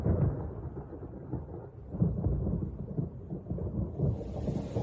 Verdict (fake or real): real